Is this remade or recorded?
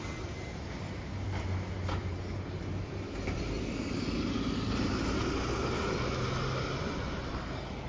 recorded